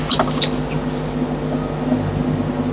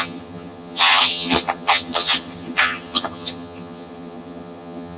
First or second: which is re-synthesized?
second